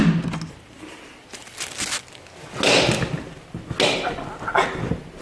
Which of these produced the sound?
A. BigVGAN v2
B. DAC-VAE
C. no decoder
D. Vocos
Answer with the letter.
C